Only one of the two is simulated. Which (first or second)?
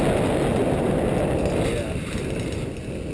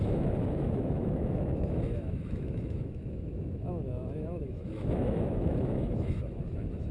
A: second